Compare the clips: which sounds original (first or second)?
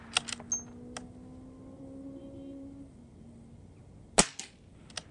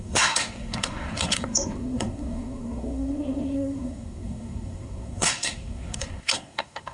first